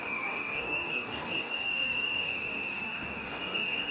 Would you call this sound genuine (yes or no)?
no